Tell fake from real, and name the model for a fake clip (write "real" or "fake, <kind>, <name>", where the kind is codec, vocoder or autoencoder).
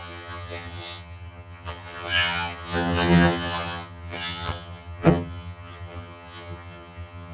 fake, vocoder, HiFi-GAN